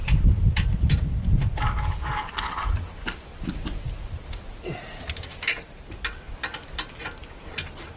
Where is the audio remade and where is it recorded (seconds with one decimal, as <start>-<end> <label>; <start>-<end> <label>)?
0.0-8.0 recorded